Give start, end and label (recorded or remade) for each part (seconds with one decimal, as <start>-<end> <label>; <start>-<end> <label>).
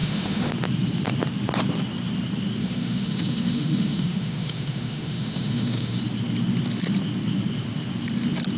0.0-0.5 remade; 0.5-2.6 recorded; 2.6-6.0 remade; 6.0-8.6 recorded